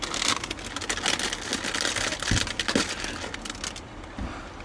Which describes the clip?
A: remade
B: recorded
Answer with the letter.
B